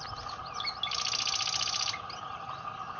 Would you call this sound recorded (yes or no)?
yes